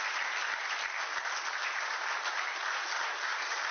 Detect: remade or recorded recorded